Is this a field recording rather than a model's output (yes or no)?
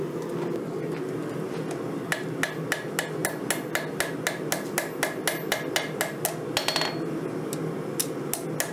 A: yes